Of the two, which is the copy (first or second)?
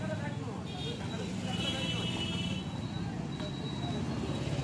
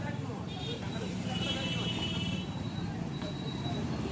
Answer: second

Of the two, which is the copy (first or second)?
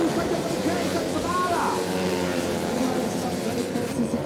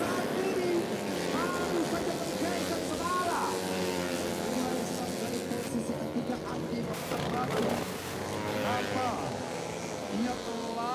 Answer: first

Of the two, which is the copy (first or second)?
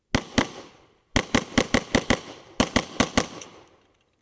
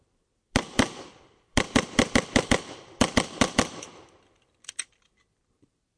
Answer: second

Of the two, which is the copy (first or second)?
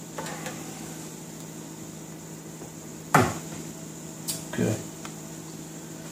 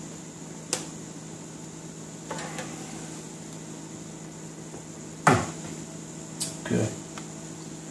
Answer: first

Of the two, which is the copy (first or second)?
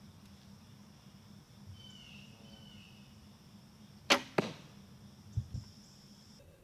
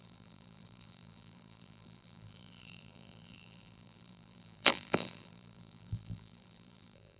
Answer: second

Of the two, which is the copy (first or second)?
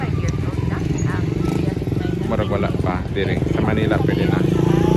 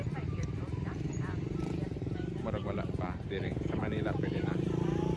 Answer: second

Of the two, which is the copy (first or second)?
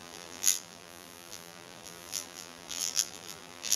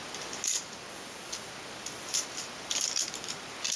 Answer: first